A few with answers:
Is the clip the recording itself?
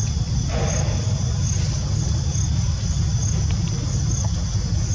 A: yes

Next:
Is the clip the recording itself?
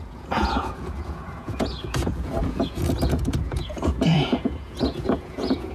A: no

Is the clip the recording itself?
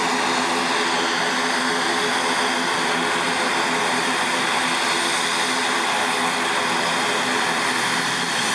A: yes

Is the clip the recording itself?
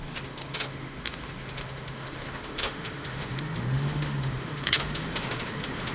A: no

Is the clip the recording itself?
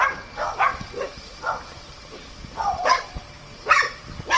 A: no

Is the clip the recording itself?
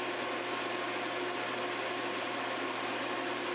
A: yes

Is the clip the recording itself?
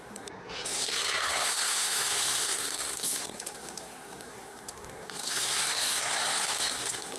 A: no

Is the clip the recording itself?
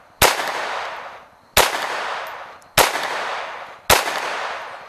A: yes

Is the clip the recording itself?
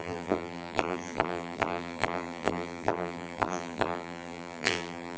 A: no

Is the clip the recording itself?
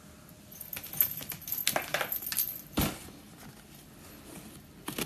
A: yes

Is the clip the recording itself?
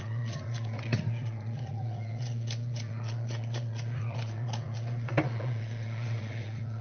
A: no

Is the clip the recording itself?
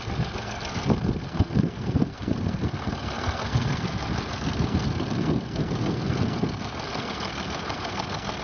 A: no